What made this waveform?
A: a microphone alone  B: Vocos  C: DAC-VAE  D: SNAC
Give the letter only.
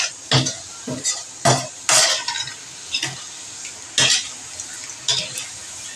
A